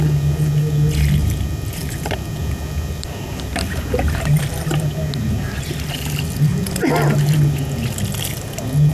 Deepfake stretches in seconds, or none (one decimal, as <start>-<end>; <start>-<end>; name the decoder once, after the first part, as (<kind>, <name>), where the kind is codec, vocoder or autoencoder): 0.0-6.5 (vocoder, BigVGAN v2)

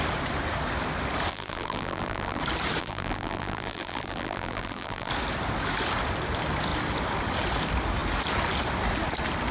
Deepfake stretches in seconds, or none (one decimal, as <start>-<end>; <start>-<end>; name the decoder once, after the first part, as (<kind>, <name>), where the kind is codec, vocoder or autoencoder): 1.3-2.4 (vocoder, BigVGAN v2); 2.8-5.1